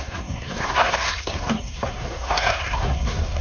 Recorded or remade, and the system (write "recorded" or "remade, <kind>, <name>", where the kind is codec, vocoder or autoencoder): remade, codec, SNAC